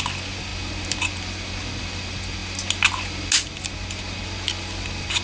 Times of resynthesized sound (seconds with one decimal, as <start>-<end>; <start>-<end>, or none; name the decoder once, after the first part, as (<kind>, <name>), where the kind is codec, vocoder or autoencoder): none